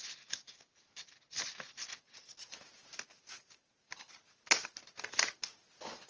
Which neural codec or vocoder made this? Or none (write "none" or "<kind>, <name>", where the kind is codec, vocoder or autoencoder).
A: none